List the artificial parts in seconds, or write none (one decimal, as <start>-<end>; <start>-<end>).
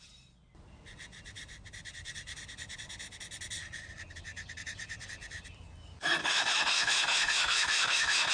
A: 6.2-8.3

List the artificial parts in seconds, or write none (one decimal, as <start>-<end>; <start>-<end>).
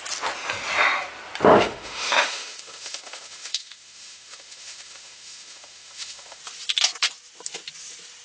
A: 1.5-6.4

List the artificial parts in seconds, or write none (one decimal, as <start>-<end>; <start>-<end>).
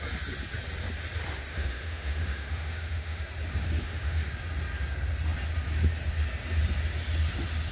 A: 1.5-3.2; 3.6-4.3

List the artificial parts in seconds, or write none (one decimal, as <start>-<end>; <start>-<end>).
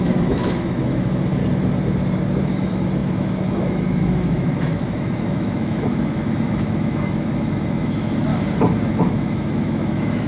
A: 0.0-1.4; 2.4-8.3; 9.0-10.3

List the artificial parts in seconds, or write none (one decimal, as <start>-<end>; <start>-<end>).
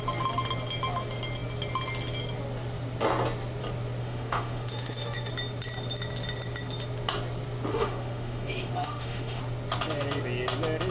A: 4.0-5.3; 7.7-9.4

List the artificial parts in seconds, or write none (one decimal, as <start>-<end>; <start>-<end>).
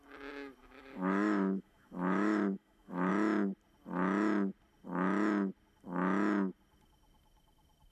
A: 0.6-3.1